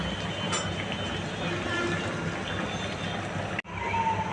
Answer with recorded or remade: recorded